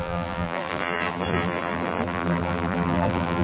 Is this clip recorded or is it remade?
remade